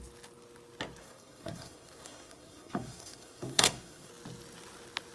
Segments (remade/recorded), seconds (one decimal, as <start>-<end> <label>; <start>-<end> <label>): 0.0-1.0 recorded; 1.0-4.1 remade; 4.1-5.1 recorded